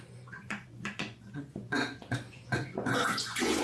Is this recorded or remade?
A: remade